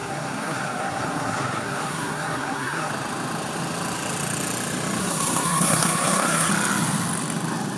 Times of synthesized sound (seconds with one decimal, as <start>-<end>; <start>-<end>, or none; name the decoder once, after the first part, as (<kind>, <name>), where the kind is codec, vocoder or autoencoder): 0.0-2.9 (codec, SNAC); 5.0-6.5